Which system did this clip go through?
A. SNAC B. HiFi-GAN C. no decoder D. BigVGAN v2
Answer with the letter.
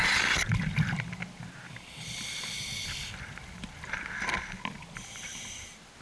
C